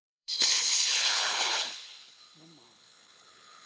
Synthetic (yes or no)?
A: yes